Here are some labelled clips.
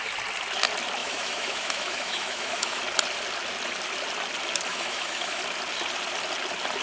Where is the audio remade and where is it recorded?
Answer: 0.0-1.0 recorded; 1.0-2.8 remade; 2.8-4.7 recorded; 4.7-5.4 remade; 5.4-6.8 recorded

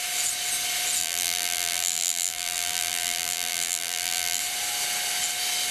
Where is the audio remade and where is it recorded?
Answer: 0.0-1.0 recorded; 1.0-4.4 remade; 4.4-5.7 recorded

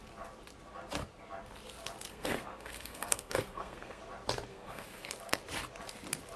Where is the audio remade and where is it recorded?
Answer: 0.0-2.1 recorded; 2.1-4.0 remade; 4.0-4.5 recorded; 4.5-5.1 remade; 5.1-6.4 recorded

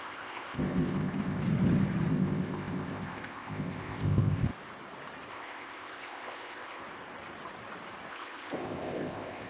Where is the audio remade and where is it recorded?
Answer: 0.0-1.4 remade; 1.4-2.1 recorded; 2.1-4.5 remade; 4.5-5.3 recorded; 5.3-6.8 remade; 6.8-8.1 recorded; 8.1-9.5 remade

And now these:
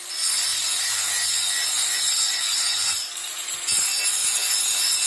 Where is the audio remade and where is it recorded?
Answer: 0.0-3.2 recorded; 3.2-3.8 remade; 3.8-4.2 recorded; 4.2-5.1 remade

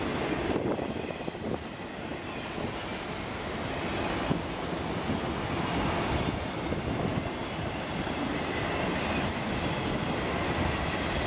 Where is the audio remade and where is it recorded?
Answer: 0.0-2.1 remade; 2.1-7.1 recorded; 7.1-11.3 remade

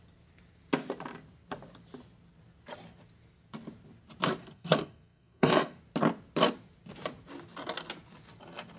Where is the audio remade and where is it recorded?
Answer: 0.0-4.4 recorded; 4.4-5.8 remade; 5.8-8.8 recorded